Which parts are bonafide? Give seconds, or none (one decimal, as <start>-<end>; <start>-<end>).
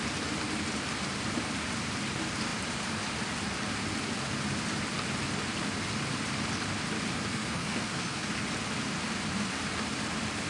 0.0-7.3; 8.3-10.5